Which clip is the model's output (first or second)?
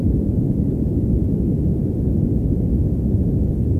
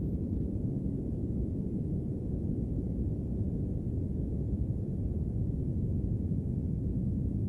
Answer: second